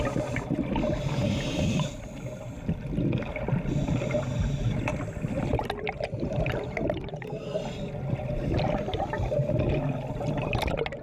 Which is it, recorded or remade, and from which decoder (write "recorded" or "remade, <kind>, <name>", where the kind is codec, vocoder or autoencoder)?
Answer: recorded